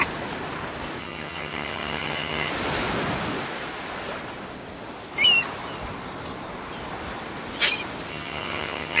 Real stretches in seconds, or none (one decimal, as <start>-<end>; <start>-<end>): 0.0-1.0; 2.5-8.1